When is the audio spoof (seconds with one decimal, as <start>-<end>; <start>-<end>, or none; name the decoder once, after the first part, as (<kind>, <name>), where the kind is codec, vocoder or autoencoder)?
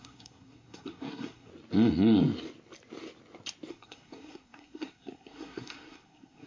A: 0.0-1.5 (codec, SNAC); 3.7-6.5